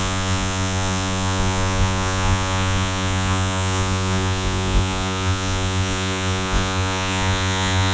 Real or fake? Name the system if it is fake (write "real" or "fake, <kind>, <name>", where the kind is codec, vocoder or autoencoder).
fake, vocoder, Vocos